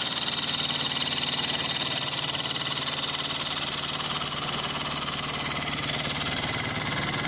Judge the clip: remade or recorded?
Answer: recorded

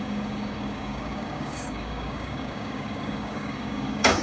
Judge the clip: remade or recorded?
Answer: remade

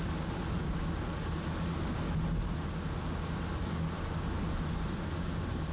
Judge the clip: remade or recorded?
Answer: recorded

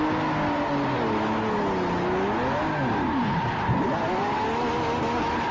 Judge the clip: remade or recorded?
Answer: recorded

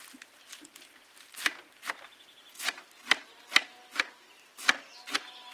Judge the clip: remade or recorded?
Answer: recorded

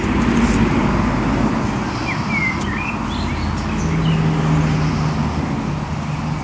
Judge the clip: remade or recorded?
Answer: recorded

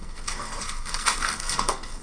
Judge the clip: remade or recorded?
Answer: remade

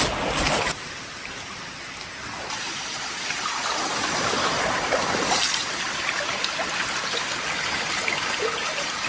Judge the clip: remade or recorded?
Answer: recorded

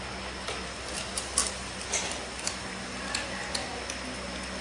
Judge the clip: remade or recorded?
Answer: recorded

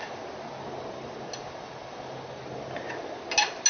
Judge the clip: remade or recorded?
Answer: recorded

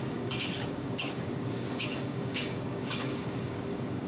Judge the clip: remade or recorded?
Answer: remade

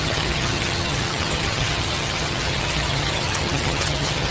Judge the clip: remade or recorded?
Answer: remade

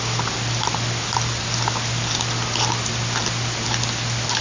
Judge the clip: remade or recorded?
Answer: recorded